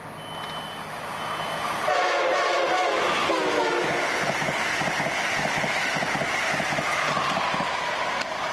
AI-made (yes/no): no